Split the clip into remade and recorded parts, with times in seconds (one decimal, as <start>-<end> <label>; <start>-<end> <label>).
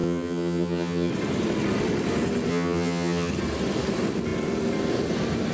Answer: 0.0-1.1 remade; 1.1-2.5 recorded; 2.5-3.3 remade; 3.3-5.5 recorded